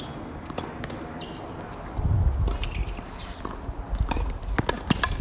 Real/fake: real